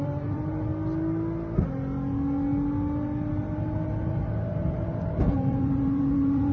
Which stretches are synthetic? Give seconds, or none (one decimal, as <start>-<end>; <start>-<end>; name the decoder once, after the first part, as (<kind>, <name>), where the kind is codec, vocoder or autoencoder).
0.0-0.7 (vocoder, BigVGAN v2); 3.3-6.5